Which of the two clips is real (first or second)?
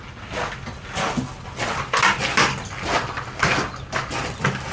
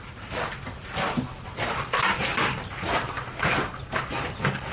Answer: first